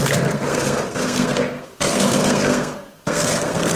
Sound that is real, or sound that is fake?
fake